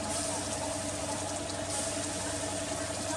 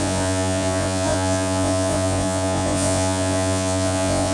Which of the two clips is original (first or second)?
first